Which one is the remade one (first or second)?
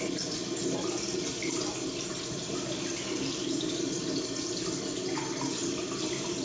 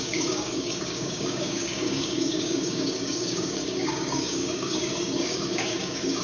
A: second